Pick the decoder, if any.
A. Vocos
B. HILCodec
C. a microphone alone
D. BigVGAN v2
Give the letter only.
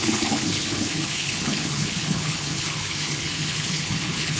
B